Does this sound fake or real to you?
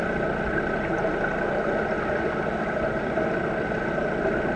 real